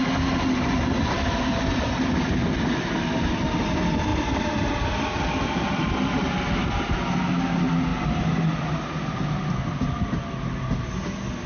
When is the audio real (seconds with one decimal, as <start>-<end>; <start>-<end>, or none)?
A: 0.0-11.5